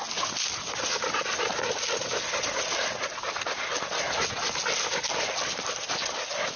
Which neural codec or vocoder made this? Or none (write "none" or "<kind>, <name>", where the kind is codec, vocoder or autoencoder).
none